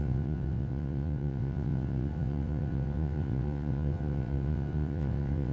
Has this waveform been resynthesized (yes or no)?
yes